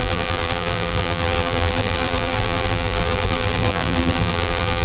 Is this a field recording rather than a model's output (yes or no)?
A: no